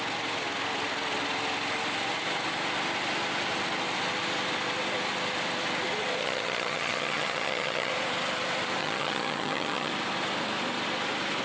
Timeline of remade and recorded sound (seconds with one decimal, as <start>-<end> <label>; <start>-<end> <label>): 0.0-6.2 recorded; 6.2-7.9 remade; 7.9-8.8 recorded; 8.8-9.9 remade; 9.9-11.4 recorded